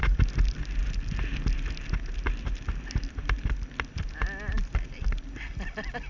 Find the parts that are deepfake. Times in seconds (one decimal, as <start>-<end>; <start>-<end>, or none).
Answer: none